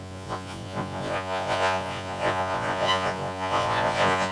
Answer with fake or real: fake